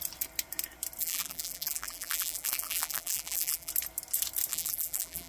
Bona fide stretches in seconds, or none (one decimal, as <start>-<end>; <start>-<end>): 0.0-1.0; 3.7-4.5